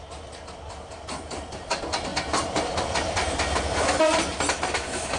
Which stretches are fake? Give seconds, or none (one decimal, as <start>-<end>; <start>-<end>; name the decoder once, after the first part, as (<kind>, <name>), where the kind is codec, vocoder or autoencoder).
none